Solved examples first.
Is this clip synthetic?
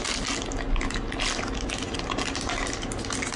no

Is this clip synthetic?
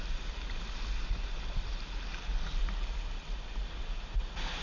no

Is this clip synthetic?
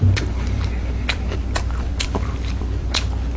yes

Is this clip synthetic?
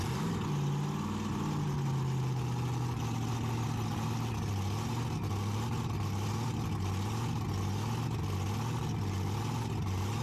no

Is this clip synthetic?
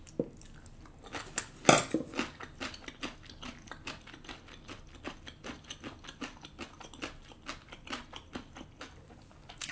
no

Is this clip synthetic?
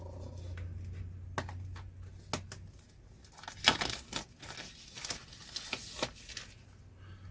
no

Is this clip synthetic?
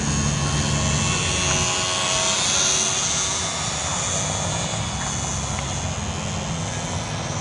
no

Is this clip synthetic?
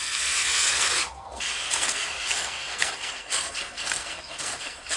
yes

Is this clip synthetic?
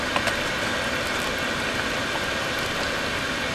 no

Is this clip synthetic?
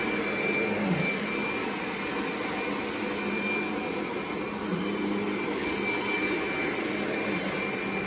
no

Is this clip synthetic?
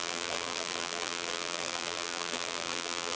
yes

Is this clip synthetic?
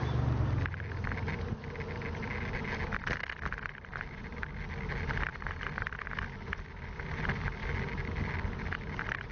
no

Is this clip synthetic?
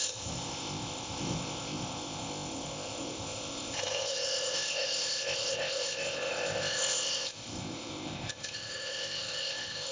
yes